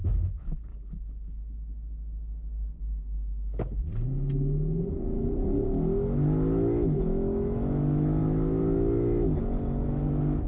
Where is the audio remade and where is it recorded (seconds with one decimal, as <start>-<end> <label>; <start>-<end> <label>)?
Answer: 0.0-0.7 remade; 0.7-4.9 recorded; 4.9-8.2 remade; 8.2-9.4 recorded; 9.4-10.5 remade